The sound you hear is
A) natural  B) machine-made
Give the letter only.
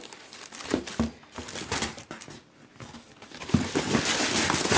A